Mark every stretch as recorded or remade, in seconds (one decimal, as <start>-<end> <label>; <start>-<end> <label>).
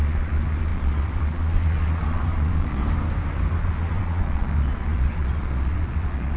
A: 0.0-2.8 remade; 2.8-3.6 recorded; 3.6-6.4 remade